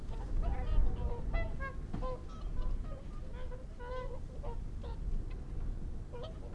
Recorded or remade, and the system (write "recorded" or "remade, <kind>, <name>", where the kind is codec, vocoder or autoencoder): recorded